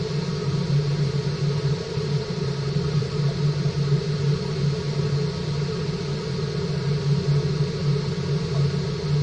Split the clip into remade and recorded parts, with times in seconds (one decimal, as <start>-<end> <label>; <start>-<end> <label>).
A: 0.0-0.4 recorded; 0.4-4.6 remade; 4.6-9.2 recorded